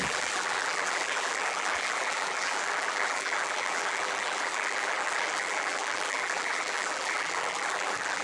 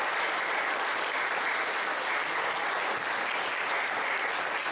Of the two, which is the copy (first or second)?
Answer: first